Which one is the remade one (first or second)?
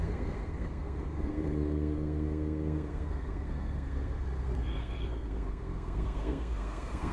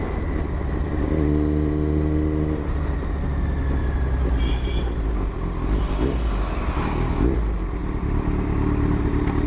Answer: first